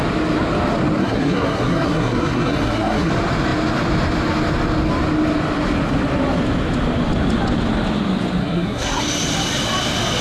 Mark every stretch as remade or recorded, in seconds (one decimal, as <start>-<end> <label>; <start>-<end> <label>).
0.0-1.0 recorded; 1.0-3.1 remade; 3.1-8.4 recorded; 8.4-9.0 remade; 9.0-10.2 recorded